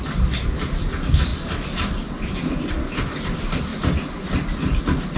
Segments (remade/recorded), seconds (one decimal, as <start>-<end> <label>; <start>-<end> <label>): 0.0-5.2 recorded